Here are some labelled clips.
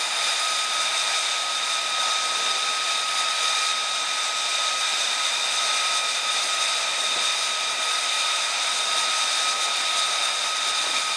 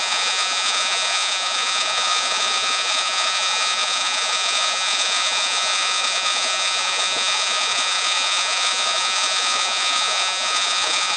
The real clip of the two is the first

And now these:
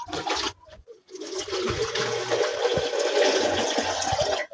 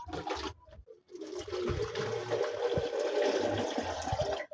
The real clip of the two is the second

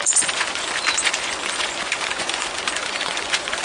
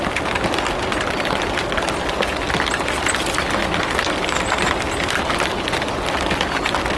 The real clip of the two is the second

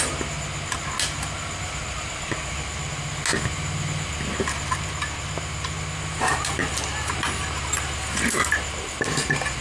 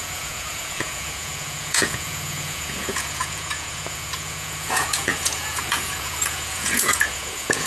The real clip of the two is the first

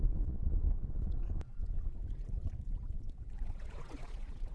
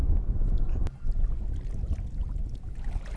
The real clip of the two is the second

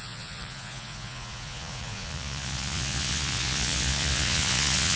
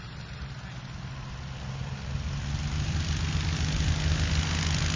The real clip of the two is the second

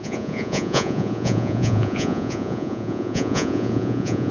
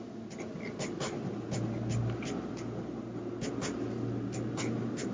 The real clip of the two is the second